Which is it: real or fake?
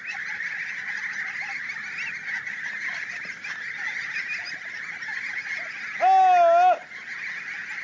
real